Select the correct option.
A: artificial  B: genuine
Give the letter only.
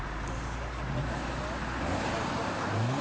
B